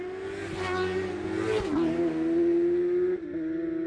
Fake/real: real